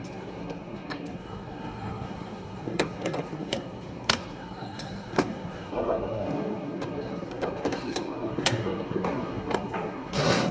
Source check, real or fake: fake